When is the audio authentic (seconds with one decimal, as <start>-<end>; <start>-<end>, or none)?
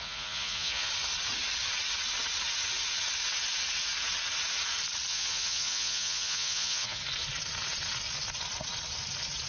0.9-5.1; 7.0-9.5